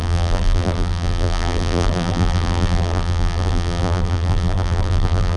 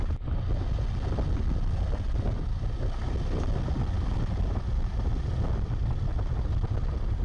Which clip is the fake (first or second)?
first